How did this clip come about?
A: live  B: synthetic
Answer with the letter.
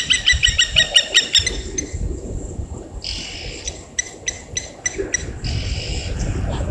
A